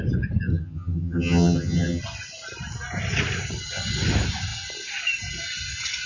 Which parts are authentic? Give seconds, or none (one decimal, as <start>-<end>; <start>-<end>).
0.0-0.5; 2.0-6.1